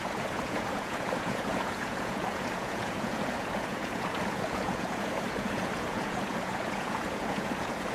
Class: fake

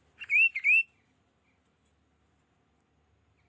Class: real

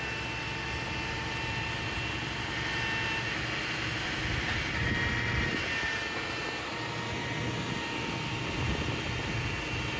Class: real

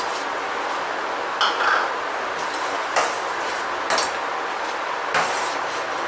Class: real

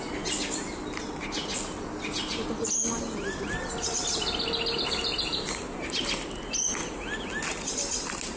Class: real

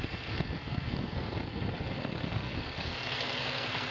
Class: fake